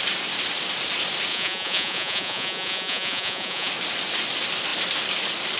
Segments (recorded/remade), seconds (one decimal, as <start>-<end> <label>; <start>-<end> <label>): 0.0-1.3 recorded; 1.3-3.7 remade; 3.7-5.6 recorded